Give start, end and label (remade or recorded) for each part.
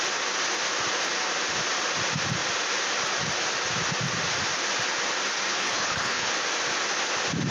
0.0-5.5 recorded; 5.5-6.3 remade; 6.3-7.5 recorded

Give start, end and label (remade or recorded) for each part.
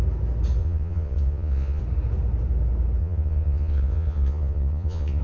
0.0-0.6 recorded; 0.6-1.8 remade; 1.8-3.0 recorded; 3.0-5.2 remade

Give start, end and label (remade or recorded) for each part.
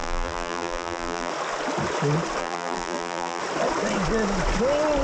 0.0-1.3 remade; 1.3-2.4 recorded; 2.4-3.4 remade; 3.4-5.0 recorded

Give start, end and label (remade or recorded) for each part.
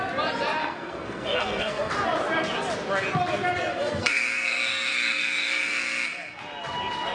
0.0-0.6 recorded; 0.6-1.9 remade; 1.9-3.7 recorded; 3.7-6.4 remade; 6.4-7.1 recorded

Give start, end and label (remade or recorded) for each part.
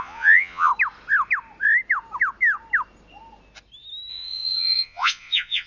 0.0-0.7 remade; 0.7-4.1 recorded; 4.1-5.7 remade